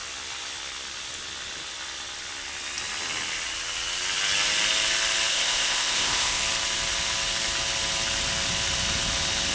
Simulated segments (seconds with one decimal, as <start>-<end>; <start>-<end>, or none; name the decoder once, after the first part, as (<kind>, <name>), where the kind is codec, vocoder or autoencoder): 5.3-6.4 (codec, ZipCodec)